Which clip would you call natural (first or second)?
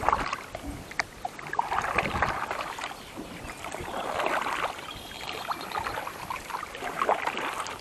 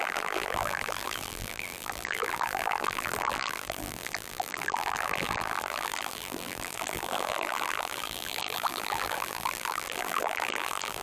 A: first